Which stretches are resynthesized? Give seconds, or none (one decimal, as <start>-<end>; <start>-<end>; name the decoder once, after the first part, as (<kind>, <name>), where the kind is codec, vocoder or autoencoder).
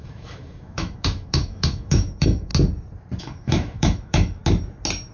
0.0-2.5 (autoencoder, DAC-VAE); 3.2-4.4